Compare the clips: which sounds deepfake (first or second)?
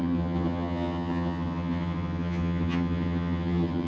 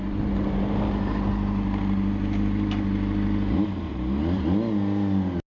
first